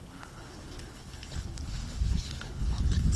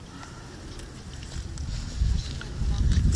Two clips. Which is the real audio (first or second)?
second